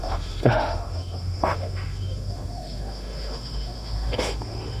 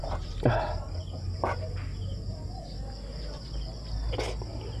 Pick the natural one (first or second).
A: second